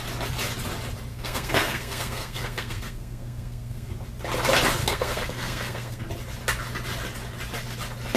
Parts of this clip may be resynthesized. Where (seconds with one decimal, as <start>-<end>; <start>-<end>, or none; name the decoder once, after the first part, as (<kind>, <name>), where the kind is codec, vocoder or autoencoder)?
1.1-3.9 (codec, SNAC); 4.8-6.0